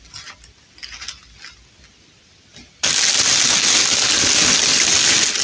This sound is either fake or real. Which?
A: real